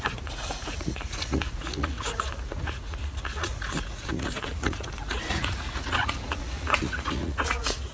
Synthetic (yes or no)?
yes